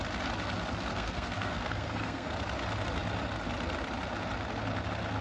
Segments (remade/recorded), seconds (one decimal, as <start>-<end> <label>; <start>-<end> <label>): 0.0-0.9 recorded; 0.9-2.3 remade; 2.3-5.2 recorded